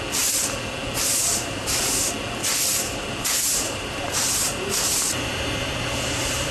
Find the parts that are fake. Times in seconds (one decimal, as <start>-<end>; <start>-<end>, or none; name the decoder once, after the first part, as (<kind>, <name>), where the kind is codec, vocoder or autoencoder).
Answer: 1.2-1.8 (vocoder, BigVGAN v2); 2.4-6.5